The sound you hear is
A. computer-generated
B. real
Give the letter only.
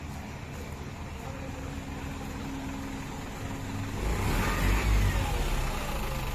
B